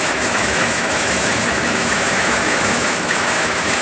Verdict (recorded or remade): remade